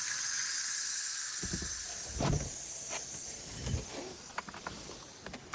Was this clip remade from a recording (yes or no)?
no